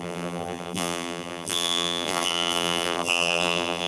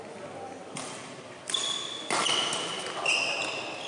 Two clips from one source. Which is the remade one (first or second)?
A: first